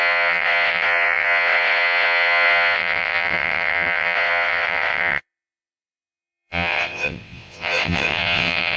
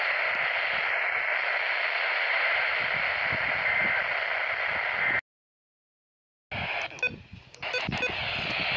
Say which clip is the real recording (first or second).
second